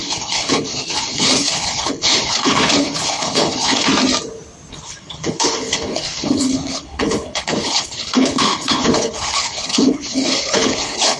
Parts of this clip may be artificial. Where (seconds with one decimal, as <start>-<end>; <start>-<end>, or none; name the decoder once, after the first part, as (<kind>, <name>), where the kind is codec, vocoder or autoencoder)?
0.0-3.9 (codec, HILCodec); 4.7-11.2